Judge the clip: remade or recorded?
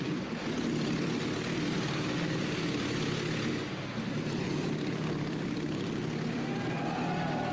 recorded